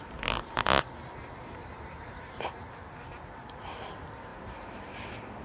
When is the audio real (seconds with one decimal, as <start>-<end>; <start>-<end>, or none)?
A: 0.0-1.4; 2.7-5.4